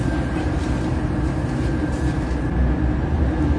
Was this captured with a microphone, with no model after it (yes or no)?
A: yes